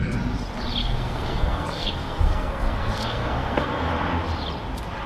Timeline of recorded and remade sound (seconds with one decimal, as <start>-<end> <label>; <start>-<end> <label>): 0.0-0.8 recorded; 0.8-3.9 remade; 3.9-5.1 recorded